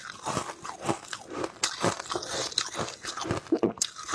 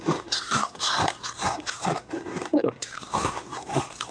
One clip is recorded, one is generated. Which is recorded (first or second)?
first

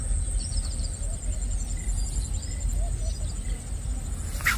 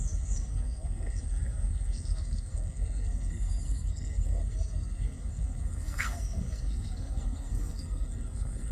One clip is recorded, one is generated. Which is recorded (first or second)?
first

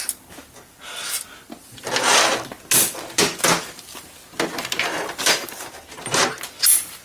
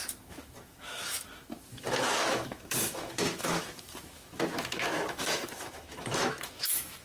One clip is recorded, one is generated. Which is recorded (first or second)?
first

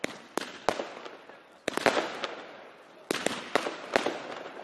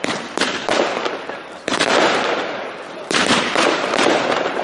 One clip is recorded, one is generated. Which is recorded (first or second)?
first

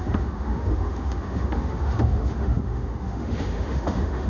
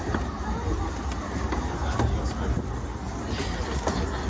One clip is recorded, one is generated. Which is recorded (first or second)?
second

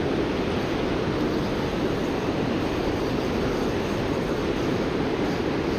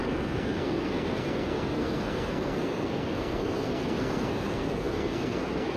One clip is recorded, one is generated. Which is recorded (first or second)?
first